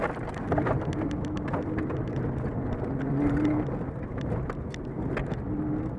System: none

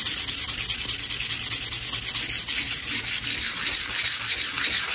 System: none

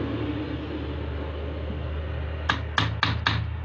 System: none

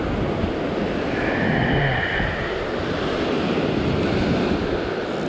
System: none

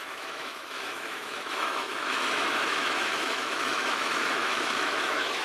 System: autoencoder, DAC-VAE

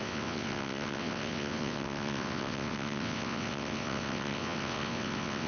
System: vocoder, WaveNeXt